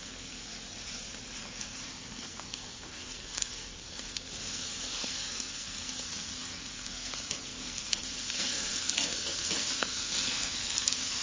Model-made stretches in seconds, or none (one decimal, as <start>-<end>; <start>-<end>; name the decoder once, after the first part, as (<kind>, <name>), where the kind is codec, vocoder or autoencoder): 0.0-0.5 (codec, SNAC); 1.4-11.2